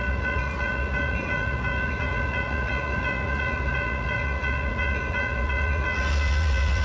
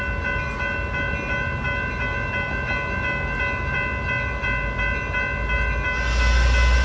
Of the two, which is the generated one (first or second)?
first